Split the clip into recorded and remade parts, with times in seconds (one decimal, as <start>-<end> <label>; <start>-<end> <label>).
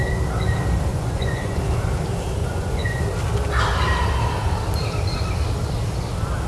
0.0-0.9 recorded; 0.9-1.6 remade; 1.6-2.4 recorded; 2.4-3.0 remade; 3.0-6.5 recorded